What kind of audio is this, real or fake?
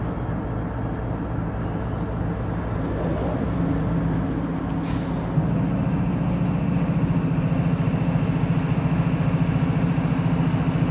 real